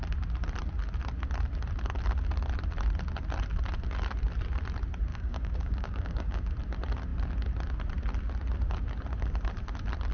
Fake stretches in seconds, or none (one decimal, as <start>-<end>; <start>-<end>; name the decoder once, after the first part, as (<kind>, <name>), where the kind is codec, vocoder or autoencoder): 5.1-6.5 (codec, DAC)